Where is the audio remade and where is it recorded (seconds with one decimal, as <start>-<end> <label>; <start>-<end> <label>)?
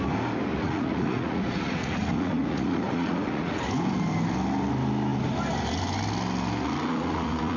0.0-0.5 recorded; 0.5-3.6 remade; 3.6-6.9 recorded; 6.9-7.6 remade